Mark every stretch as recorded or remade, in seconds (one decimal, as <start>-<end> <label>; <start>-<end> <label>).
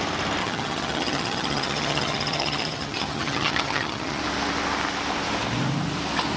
0.0-0.4 recorded; 0.4-4.2 remade; 4.2-6.4 recorded